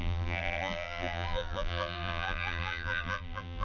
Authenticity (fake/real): fake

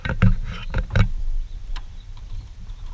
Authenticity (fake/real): fake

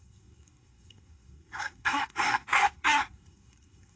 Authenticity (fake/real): fake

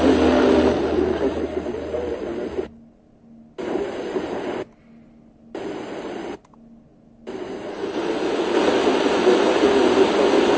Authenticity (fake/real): real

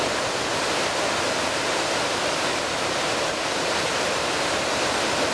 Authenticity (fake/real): real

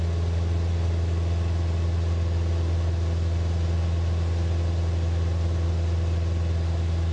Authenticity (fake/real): real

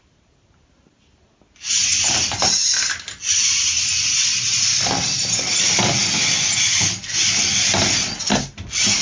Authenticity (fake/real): real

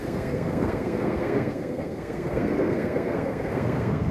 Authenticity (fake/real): fake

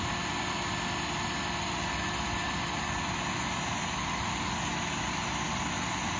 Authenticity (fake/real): real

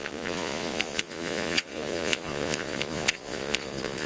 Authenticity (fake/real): fake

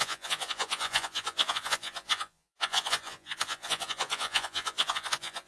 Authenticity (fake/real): fake